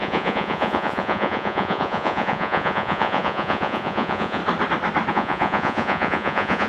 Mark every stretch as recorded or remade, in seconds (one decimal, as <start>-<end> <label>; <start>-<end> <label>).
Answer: 0.0-4.4 remade; 4.4-5.1 recorded; 5.1-6.7 remade